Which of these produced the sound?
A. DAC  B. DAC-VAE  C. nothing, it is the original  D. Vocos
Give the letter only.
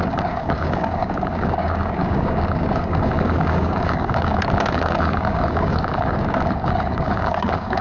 A